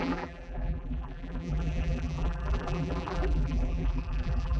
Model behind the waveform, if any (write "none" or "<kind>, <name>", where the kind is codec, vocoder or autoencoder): vocoder, BigVGAN v2